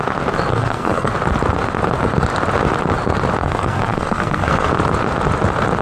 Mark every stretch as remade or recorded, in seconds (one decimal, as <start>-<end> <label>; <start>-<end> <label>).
0.0-0.5 recorded; 0.5-1.1 remade; 1.1-3.4 recorded; 3.4-4.7 remade; 4.7-5.8 recorded